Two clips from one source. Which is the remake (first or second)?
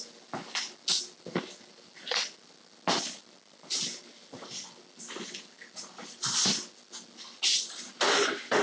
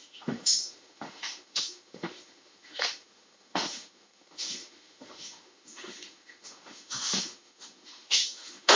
second